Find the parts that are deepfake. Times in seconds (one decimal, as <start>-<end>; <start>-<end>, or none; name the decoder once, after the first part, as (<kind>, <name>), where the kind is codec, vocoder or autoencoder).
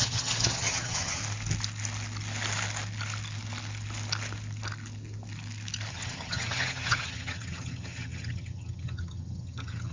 0.0-1.2 (vocoder, HiFi-GAN); 5.9-9.9